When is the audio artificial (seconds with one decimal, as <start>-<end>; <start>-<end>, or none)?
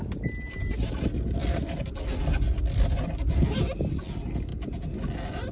1.4-3.3